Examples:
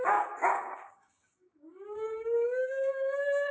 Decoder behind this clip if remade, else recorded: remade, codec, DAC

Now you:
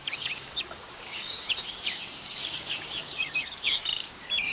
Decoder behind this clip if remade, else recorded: remade, codec, DAC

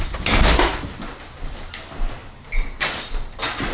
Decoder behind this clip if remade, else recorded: recorded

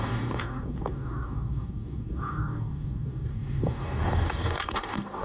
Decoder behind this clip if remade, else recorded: remade, codec, DAC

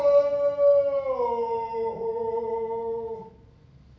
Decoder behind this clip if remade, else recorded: recorded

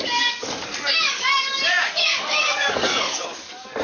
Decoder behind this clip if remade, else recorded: remade, codec, DAC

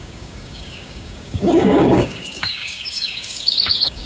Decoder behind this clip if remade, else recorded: remade, codec, DAC